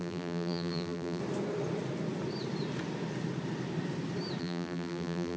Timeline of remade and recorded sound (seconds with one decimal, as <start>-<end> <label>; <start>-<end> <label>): 0.0-1.2 remade; 1.2-4.4 recorded; 4.4-5.4 remade